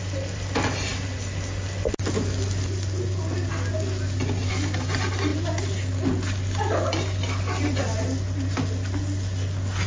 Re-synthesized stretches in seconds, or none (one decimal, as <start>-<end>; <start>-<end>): none